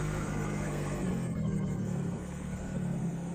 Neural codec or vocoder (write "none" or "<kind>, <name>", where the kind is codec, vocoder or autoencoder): codec, SNAC